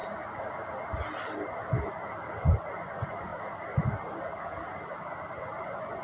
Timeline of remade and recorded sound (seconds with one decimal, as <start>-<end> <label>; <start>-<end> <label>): 0.0-2.7 recorded; 2.7-3.3 remade; 3.3-5.6 recorded; 5.6-6.0 remade